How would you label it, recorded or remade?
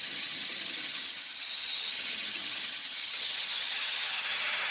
remade